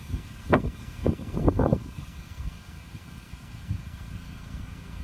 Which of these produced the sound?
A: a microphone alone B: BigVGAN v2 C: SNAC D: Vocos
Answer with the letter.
C